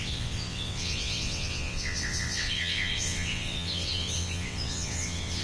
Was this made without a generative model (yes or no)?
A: no